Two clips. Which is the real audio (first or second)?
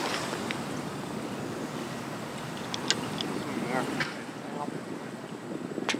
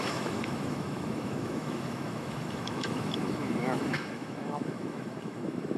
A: first